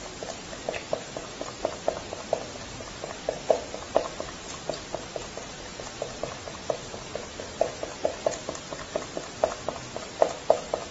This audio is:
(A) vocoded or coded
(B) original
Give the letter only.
A